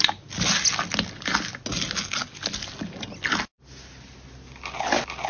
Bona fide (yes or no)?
yes